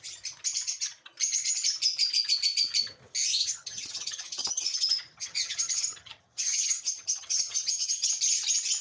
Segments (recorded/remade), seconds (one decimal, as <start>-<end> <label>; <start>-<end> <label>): 0.0-3.4 recorded; 3.4-8.1 remade; 8.1-8.8 recorded